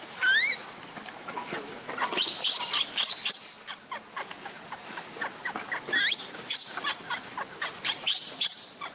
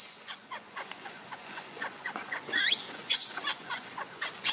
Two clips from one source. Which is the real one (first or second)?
first